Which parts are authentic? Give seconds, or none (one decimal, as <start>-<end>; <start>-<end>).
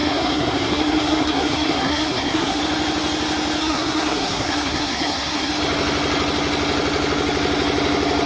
2.6-3.6; 5.5-8.3